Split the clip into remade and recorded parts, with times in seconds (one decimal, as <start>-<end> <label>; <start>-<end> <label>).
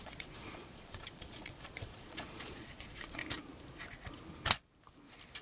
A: 0.0-3.2 remade; 3.2-5.4 recorded